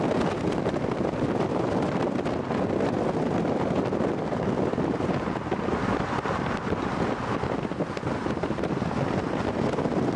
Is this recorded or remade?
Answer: recorded